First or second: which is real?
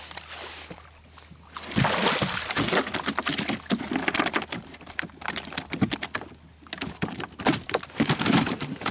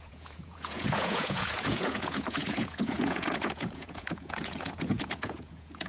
first